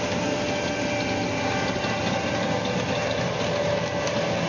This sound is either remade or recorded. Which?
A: recorded